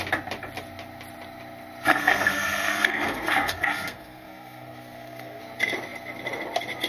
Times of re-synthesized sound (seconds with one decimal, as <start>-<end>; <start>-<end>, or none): 1.9-5.4